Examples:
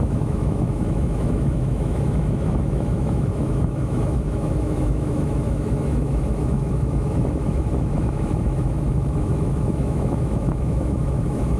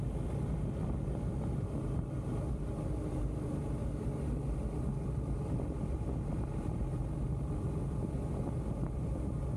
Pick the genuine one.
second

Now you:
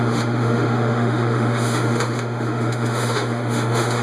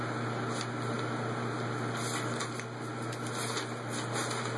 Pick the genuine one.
second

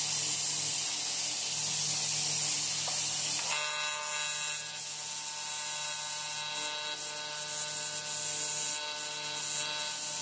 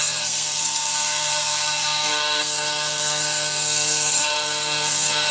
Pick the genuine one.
first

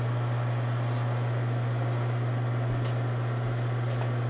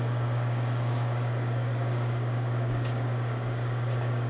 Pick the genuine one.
first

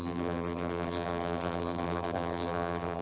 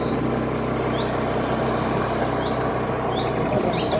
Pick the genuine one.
second